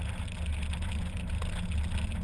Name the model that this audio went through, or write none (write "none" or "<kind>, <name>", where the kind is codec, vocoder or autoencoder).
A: none